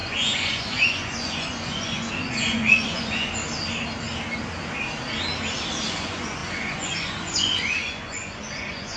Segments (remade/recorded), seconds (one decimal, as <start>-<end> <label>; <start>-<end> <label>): 0.0-3.4 remade; 3.4-5.9 recorded; 5.9-9.0 remade